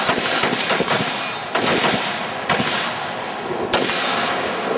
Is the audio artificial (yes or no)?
no